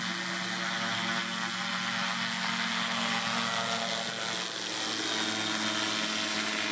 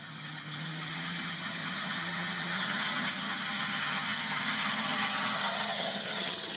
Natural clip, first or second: first